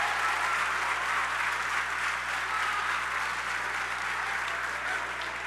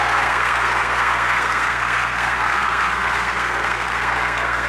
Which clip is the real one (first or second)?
first